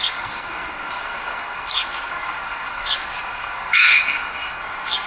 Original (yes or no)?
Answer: no